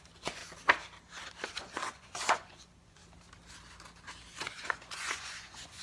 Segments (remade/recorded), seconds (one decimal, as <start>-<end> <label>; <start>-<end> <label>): 0.0-0.4 remade; 0.4-1.6 recorded; 1.6-3.0 remade; 3.0-4.4 recorded; 4.4-5.8 remade